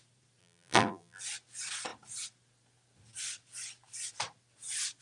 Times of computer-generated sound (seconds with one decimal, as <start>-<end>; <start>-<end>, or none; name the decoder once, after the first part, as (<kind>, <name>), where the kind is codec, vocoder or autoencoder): 0.4-1.2 (vocoder, BigVGAN v2)